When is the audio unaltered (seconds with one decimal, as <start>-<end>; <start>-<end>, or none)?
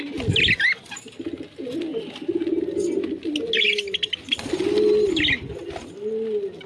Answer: 0.0-6.7